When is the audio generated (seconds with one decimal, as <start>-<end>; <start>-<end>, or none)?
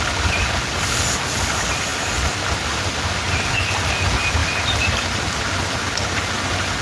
none